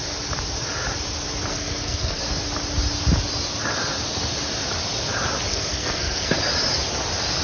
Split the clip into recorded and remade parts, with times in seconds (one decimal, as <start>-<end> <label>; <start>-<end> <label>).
0.0-1.5 recorded; 1.5-2.2 remade; 2.2-5.5 recorded; 5.5-6.4 remade; 6.4-7.4 recorded